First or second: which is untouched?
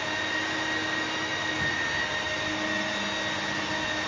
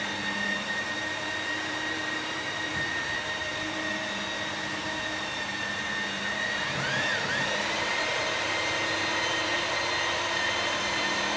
first